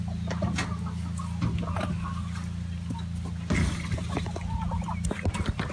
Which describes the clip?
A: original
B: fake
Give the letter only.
A